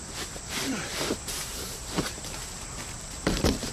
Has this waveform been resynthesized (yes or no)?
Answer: yes